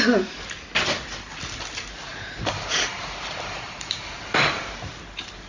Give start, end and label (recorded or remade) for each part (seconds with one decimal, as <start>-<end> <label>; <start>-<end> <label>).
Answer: 0.0-2.1 recorded; 2.1-5.5 remade